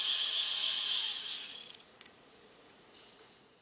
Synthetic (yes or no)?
yes